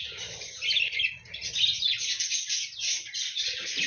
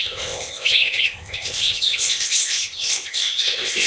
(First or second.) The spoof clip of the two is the second